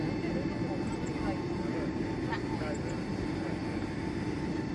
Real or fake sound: real